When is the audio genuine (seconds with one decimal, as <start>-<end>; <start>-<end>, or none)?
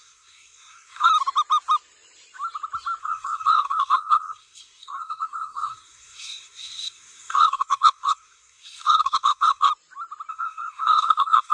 1.1-3.0; 9.7-10.3